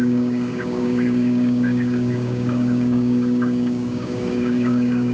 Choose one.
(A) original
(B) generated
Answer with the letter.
B